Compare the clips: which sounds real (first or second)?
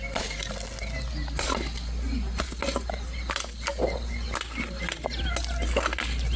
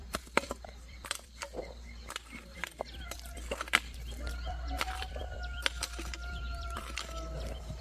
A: first